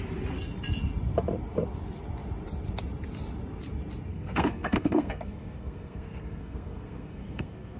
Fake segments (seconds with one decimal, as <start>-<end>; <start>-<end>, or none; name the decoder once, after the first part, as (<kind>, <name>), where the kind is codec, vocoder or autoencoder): 4.1-7.8 (codec, SNAC)

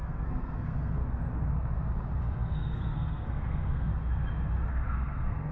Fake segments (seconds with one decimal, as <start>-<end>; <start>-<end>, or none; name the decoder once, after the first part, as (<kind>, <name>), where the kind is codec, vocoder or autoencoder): 0.0-1.0 (codec, SNAC); 2.2-3.9; 4.7-5.5

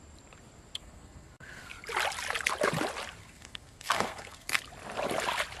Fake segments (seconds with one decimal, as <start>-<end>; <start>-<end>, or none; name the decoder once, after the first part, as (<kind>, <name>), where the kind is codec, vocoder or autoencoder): 0.8-1.7 (codec, SNAC); 3.2-4.6

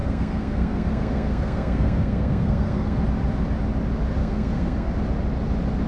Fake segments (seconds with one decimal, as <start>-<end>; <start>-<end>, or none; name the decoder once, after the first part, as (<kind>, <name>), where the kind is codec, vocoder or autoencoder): 0.0-3.0 (codec, SNAC); 4.2-4.9

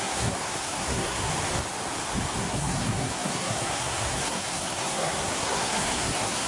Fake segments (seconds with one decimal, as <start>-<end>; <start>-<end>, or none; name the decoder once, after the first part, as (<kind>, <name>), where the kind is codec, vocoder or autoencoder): 0.0-1.3 (codec, SNAC); 2.4-6.5

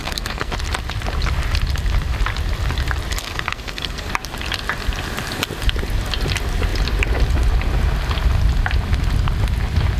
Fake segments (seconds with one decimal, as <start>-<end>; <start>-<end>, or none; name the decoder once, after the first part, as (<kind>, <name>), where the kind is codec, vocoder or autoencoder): 0.0-0.5 (codec, SNAC); 3.2-4.1

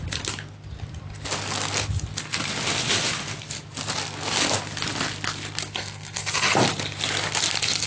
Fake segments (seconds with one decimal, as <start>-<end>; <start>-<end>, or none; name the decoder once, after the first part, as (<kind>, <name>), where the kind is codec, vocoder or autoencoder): 5.7-6.3 (codec, SNAC)

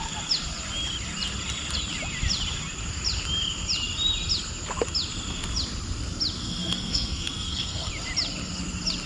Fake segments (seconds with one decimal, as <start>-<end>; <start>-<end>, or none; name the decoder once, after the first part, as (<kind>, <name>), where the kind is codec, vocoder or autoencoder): 6.4-7.9 (codec, SNAC)